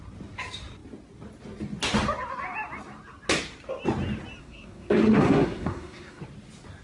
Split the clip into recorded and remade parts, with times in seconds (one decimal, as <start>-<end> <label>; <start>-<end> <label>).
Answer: 0.0-4.4 recorded; 4.4-6.2 remade; 6.2-6.8 recorded